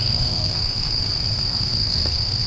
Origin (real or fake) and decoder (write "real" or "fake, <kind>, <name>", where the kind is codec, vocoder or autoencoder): fake, codec, SNAC